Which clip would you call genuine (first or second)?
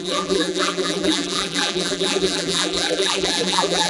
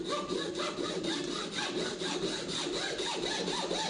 second